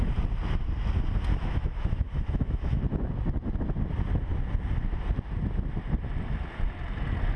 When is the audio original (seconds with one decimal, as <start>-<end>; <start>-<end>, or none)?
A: 0.0-1.3; 2.8-7.4

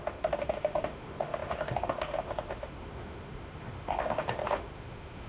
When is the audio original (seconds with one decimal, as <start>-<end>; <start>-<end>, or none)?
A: none

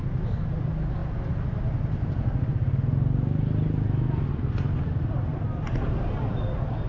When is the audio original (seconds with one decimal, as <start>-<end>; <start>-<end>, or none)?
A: 0.0-6.9

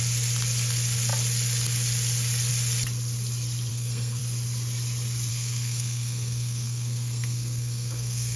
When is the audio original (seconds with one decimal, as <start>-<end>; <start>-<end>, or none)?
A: 0.0-3.7; 4.2-5.3

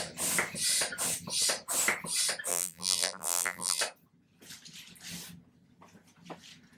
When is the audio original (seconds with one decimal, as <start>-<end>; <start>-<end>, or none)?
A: 0.0-2.5; 3.8-6.8

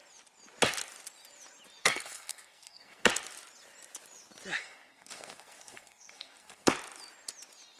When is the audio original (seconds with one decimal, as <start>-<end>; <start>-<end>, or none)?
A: 0.0-1.8; 3.1-4.6; 6.7-7.8